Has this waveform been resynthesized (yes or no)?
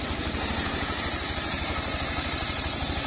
no